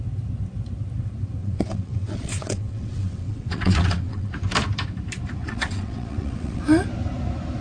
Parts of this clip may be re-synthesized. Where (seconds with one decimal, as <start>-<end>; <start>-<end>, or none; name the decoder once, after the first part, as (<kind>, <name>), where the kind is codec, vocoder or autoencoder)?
1.4-4.3 (vocoder, WaveNeXt); 5.4-6.6